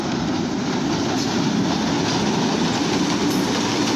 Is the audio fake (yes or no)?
no